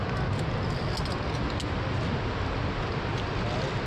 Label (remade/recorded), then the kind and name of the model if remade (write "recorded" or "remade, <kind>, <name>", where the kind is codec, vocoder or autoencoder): recorded